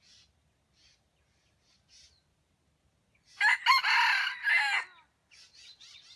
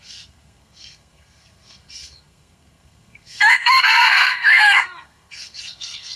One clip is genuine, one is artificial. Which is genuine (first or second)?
first